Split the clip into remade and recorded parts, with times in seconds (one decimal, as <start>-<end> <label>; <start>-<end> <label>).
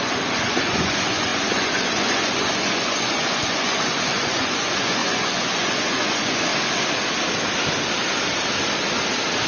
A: 0.0-6.5 remade; 6.5-9.5 recorded